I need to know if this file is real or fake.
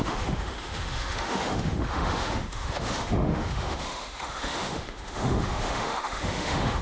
fake